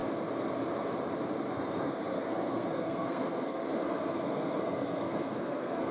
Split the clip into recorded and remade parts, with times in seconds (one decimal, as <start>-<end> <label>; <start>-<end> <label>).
0.0-1.5 recorded; 1.5-5.9 remade